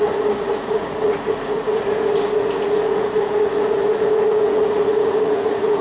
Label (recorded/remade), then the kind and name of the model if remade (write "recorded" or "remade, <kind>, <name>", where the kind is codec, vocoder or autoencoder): remade, vocoder, Vocos